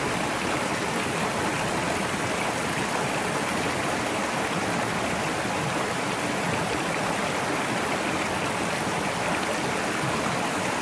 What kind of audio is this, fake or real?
real